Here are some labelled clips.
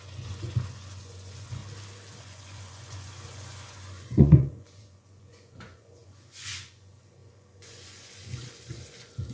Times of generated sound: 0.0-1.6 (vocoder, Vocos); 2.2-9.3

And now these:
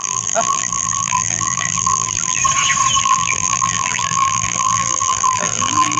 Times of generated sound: 0.0-2.4 (vocoder, BigVGAN v2); 3.0-6.0

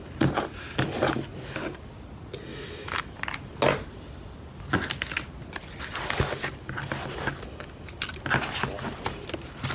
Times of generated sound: 2.5-3.0 (autoencoder, DAC-VAE)

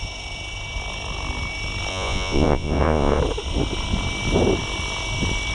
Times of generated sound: 1.9-3.2 (vocoder, Vocos)

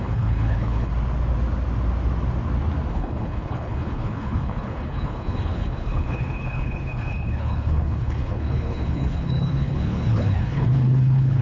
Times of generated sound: 0.0-0.9 (codec, HILCodec); 2.9-11.4

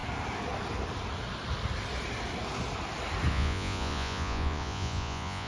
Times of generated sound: 3.3-5.5 (vocoder, Vocos)

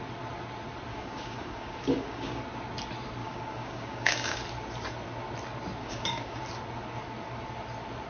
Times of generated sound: 0.9-2.4 (codec, DAC); 3.2-4.4; 5.8-6.4